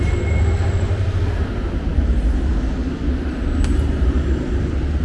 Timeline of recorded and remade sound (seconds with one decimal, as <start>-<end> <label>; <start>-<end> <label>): 0.0-5.0 recorded